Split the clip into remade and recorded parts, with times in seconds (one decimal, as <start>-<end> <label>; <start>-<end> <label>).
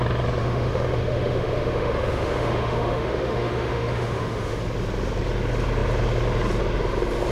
0.0-0.4 recorded; 0.4-4.6 remade; 4.6-7.3 recorded